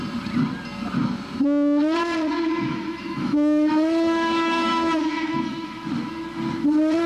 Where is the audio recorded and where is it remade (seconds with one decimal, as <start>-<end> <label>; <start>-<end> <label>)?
0.0-2.7 recorded; 2.7-5.9 remade; 5.9-7.1 recorded